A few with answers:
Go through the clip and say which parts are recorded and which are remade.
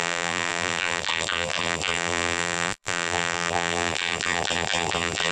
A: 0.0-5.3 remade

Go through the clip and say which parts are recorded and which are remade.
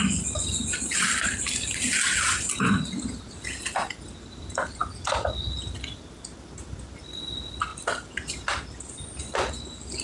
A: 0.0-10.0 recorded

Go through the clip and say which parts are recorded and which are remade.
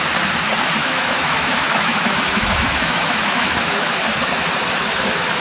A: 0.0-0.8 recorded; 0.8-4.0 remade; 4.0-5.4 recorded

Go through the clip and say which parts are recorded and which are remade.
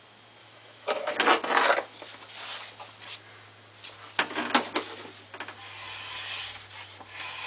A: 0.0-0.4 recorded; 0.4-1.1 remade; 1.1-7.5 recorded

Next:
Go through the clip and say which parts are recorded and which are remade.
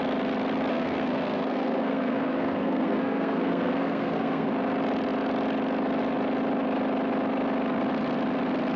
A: 0.0-0.7 recorded; 0.7-4.5 remade; 4.5-8.8 recorded